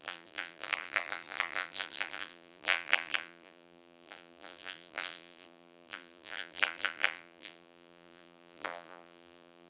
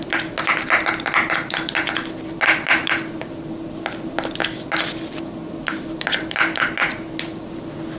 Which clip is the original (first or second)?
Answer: second